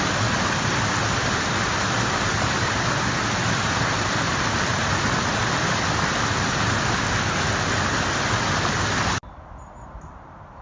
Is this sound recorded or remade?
recorded